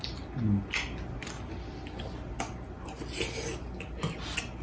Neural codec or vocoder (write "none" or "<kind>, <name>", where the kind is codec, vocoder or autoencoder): none